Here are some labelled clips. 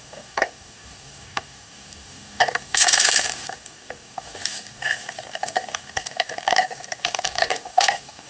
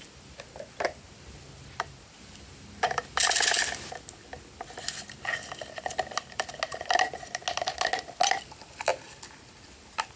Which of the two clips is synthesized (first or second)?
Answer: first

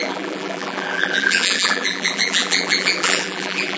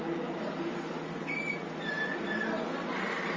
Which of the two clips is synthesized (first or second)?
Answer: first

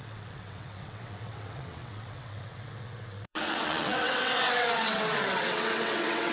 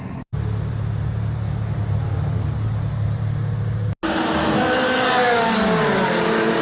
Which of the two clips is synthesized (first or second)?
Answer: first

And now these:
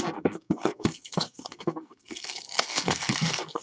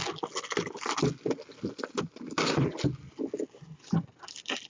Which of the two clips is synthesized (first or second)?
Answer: first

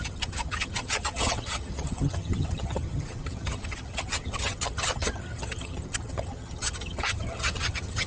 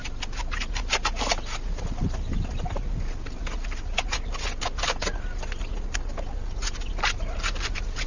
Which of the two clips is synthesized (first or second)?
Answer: first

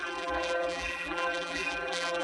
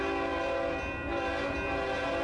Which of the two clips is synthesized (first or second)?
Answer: first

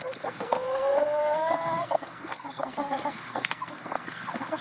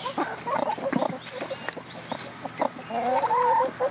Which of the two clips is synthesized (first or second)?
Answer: first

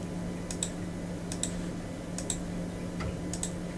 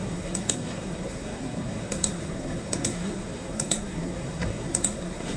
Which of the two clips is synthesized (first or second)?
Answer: second